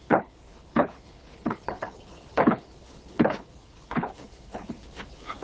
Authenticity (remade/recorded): remade